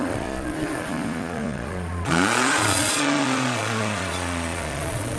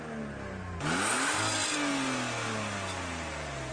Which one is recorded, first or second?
second